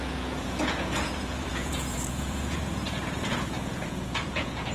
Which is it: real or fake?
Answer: fake